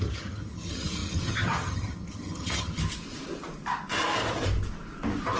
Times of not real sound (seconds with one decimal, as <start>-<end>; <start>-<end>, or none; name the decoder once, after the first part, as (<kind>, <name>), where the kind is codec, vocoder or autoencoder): 0.0-2.8 (vocoder, HiFi-GAN)

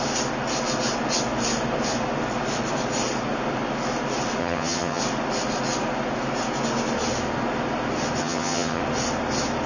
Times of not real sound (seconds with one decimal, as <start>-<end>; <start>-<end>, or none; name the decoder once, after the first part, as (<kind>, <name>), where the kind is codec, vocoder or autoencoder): 4.4-5.0 (vocoder, HiFi-GAN); 8.2-8.8

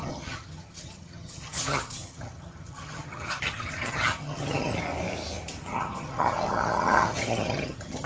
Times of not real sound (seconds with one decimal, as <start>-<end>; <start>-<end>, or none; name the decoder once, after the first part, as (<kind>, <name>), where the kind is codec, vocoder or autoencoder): 0.0-4.7 (vocoder, HiFi-GAN); 5.6-8.1

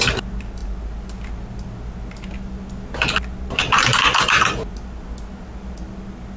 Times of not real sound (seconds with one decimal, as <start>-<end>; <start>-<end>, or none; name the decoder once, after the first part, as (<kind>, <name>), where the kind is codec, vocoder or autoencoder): none

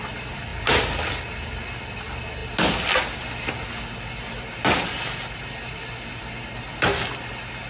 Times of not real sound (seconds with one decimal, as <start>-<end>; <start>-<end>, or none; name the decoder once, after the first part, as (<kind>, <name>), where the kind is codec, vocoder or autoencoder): none